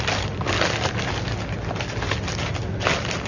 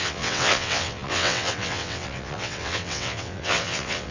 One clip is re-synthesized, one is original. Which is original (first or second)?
first